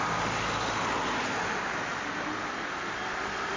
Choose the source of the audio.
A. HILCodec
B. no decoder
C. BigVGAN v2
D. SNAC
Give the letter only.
B